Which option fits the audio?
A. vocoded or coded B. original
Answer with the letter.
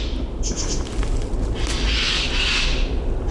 B